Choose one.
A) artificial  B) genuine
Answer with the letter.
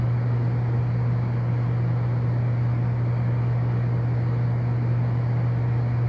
B